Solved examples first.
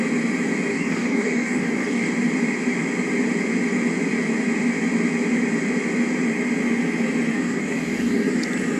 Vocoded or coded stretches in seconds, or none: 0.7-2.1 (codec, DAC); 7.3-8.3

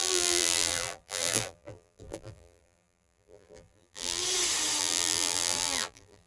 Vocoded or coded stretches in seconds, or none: 0.0-4.2 (vocoder, BigVGAN v2); 4.8-6.3